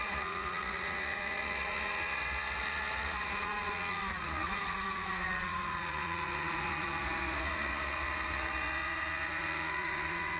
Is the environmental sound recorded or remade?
remade